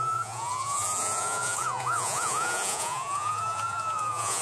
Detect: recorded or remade remade